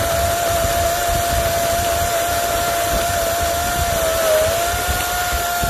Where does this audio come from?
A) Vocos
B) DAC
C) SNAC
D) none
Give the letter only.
D